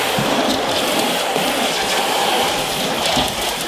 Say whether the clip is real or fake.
real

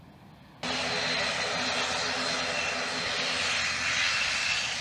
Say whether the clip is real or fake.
real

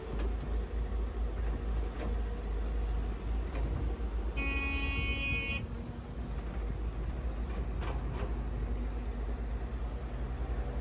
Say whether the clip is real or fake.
real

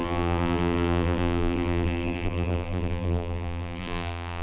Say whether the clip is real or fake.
fake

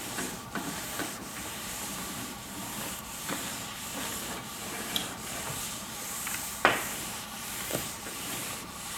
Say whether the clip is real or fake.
fake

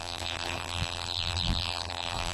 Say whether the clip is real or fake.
fake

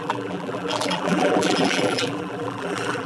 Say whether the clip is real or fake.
fake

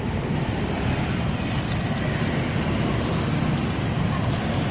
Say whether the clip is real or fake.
fake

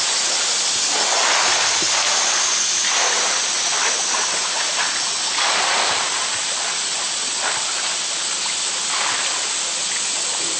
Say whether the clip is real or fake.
real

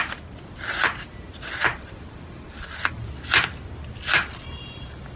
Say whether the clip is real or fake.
fake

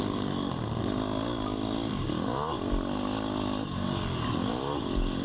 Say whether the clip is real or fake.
real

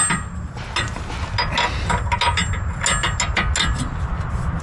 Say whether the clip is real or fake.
real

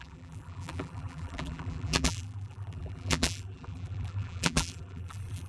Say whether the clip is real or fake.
fake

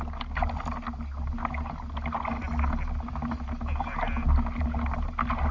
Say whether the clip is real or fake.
real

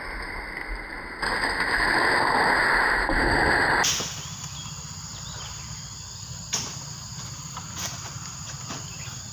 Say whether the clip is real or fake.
real